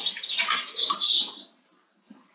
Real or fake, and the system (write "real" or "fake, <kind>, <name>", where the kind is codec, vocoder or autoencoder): fake, vocoder, BigVGAN v2